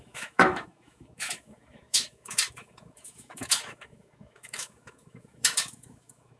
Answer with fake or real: fake